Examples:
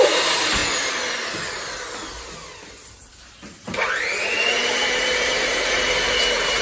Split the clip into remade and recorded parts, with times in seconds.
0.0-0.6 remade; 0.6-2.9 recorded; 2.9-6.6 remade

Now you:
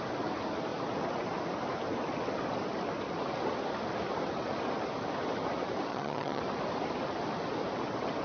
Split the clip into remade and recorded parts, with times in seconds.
0.0-5.9 recorded; 5.9-6.4 remade; 6.4-8.2 recorded

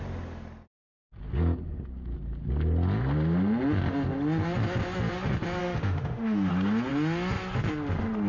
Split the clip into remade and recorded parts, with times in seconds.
0.0-5.6 recorded; 5.6-6.5 remade; 6.5-8.3 recorded